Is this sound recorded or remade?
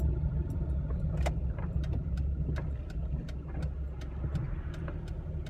recorded